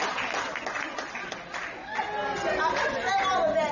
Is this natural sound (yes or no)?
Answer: yes